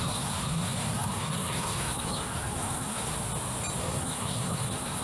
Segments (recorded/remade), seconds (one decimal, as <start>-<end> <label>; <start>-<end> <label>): 0.0-3.1 remade; 3.1-3.8 recorded; 3.8-5.0 remade